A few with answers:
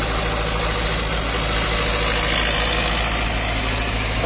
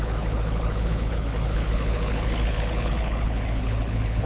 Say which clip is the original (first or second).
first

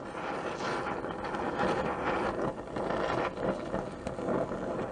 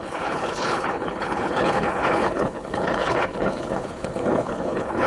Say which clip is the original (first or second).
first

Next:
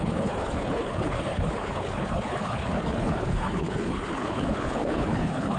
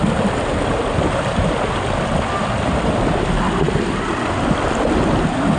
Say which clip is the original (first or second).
second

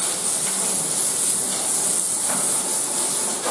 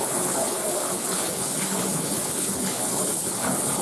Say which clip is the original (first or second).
first